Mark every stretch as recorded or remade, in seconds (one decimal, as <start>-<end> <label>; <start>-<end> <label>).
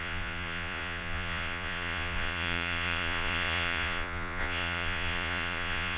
0.0-6.0 remade